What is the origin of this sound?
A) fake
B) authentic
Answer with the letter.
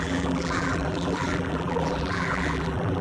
A